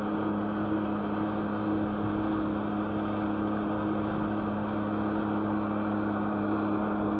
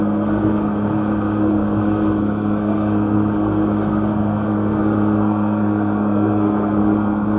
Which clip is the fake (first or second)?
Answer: second